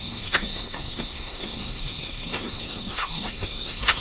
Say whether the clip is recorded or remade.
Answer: remade